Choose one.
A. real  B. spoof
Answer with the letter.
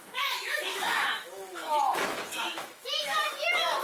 B